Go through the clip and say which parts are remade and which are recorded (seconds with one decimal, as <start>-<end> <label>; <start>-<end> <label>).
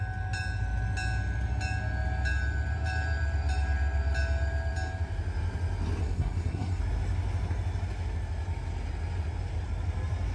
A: 0.0-6.0 recorded; 6.0-6.8 remade; 6.8-10.3 recorded